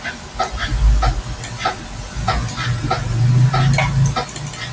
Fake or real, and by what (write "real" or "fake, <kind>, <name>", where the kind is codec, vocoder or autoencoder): real